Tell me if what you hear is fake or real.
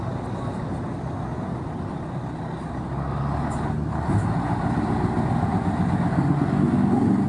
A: real